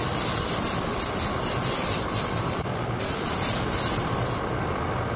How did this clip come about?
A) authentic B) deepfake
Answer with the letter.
A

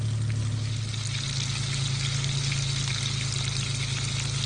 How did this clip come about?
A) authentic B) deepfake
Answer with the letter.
A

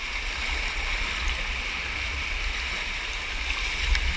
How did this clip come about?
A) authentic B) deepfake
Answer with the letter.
A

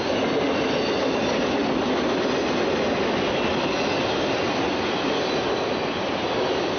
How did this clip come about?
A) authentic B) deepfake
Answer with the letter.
A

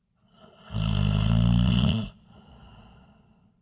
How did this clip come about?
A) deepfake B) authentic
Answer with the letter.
B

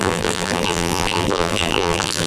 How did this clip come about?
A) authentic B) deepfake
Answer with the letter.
B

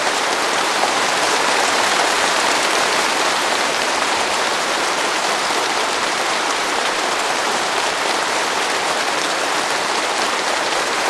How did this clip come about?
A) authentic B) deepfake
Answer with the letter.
B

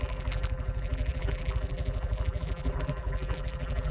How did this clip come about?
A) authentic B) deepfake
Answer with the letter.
B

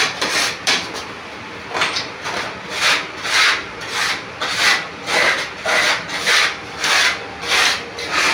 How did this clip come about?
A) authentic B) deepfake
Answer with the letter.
A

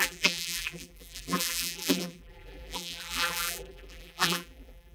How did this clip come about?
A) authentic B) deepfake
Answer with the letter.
B